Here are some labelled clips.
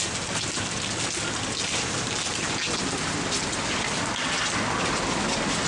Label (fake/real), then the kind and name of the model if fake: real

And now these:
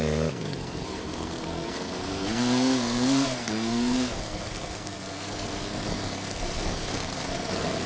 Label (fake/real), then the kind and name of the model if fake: fake, codec, SNAC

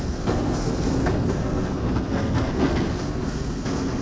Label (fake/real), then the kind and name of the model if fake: fake, codec, SNAC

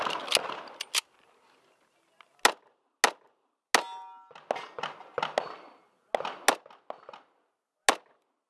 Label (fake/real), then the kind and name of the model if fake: real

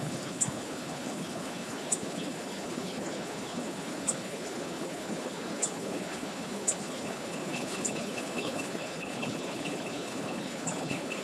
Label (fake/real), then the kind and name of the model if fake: fake, codec, HILCodec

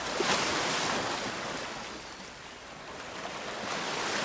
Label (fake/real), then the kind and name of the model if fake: real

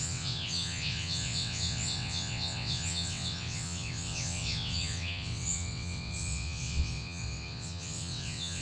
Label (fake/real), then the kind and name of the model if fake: fake, vocoder, WaveNeXt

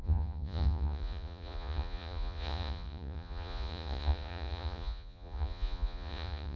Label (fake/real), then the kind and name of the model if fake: fake, vocoder, Vocos